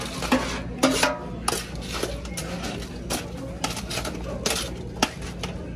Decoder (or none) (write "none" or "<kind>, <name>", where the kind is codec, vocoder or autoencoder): none